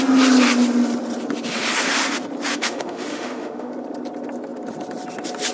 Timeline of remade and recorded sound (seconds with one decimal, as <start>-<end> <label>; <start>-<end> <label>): 0.0-2.5 recorded; 2.5-3.7 remade; 3.7-5.5 recorded